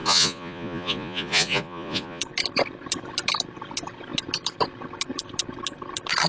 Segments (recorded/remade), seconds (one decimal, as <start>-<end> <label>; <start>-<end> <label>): 0.0-2.2 remade; 2.2-6.3 recorded

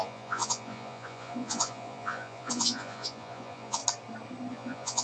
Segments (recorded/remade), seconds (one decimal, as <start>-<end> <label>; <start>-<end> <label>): 0.0-3.8 remade; 3.8-4.5 recorded; 4.5-5.0 remade

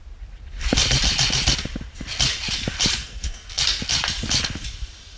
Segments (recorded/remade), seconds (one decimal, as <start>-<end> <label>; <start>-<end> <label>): 0.0-3.0 recorded; 3.0-3.6 remade; 3.6-5.2 recorded